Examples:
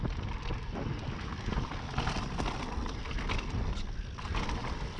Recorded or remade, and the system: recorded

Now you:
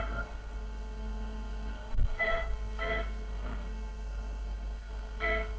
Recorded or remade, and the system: remade, codec, SNAC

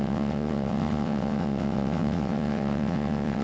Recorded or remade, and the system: remade, vocoder, WaveNeXt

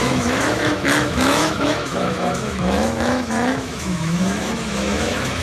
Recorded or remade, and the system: remade, autoencoder, DAC-VAE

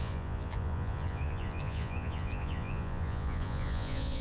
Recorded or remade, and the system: remade, vocoder, Vocos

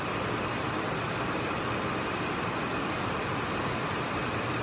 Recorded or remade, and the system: recorded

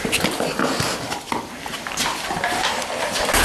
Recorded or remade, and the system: recorded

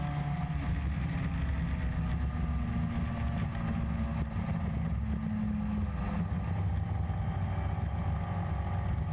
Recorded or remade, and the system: recorded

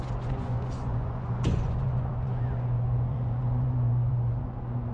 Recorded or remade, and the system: remade, vocoder, Vocos